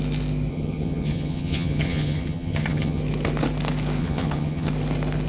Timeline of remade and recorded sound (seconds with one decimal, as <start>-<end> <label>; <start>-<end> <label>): 0.0-0.5 recorded; 0.5-3.0 remade; 3.0-4.0 recorded; 4.0-4.7 remade; 4.7-5.3 recorded